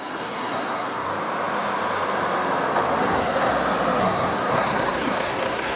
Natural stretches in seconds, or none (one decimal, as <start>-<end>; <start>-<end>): 1.1-3.0; 3.5-4.0